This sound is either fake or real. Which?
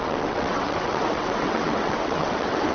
fake